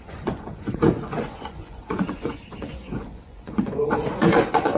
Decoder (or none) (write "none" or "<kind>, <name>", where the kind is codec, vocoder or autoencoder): vocoder, Vocos